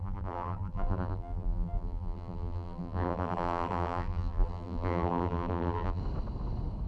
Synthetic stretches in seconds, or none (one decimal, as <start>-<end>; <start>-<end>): 0.0-6.0

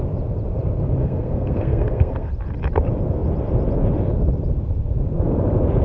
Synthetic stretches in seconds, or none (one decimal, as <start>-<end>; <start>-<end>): 1.0-2.3

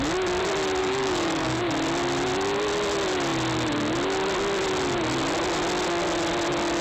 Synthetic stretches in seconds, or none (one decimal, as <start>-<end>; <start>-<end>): 0.8-1.6